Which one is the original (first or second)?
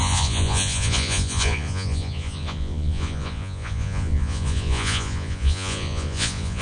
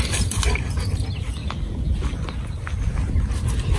second